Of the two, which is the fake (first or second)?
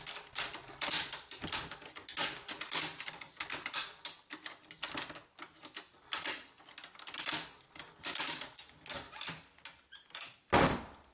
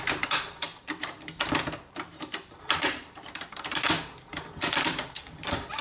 second